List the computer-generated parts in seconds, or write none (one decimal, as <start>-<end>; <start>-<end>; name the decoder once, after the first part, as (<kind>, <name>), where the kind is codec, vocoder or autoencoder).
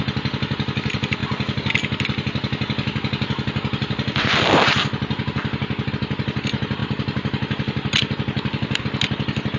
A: none